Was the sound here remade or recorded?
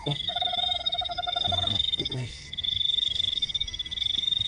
remade